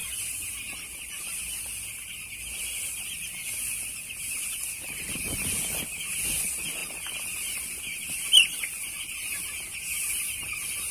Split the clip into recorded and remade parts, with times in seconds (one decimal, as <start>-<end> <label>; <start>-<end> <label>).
0.0-6.8 recorded; 6.8-7.6 remade; 7.6-10.9 recorded

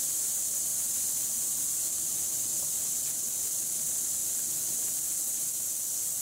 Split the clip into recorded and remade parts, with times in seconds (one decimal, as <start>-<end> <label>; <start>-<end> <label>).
0.0-6.2 recorded

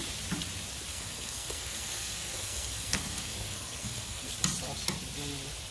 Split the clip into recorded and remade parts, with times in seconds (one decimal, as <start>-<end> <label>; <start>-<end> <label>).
0.0-0.9 recorded; 0.9-4.3 remade; 4.3-5.7 recorded